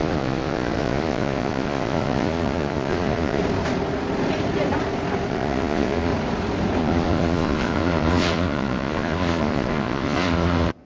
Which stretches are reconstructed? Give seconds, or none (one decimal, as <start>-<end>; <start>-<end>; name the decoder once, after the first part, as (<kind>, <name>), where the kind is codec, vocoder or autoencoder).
0.0-3.4 (vocoder, Vocos); 5.3-6.1; 6.8-10.8